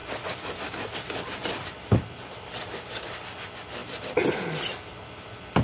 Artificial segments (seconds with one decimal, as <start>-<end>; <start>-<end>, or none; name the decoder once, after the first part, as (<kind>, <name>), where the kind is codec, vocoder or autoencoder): none